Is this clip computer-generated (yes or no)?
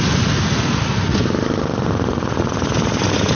no